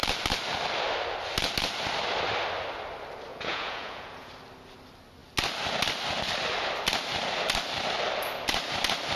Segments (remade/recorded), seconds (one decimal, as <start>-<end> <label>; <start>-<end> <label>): 0.0-3.3 recorded; 3.3-4.3 remade; 4.3-9.2 recorded